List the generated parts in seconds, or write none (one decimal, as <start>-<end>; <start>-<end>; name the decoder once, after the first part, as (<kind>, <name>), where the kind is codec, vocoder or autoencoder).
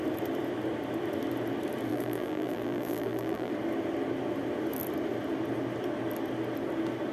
1.9-3.5 (vocoder, BigVGAN v2)